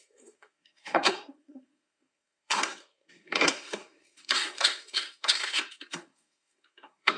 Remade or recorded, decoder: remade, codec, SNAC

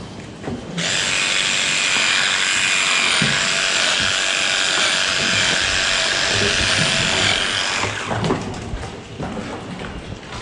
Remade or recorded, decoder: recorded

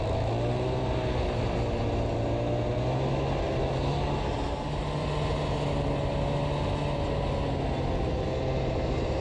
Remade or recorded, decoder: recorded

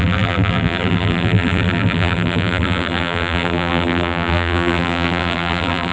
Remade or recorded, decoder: remade, vocoder, BigVGAN v2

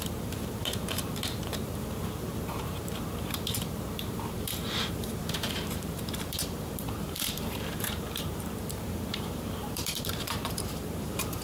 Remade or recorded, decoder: remade, vocoder, BigVGAN v2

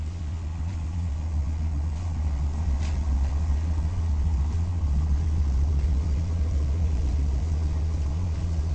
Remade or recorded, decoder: remade, vocoder, Vocos